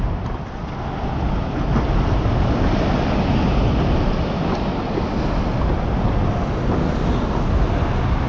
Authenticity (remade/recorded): recorded